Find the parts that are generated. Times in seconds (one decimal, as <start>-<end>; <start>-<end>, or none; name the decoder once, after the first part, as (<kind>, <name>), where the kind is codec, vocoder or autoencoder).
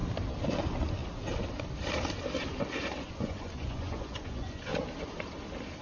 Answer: 3.0-4.7 (vocoder, Vocos)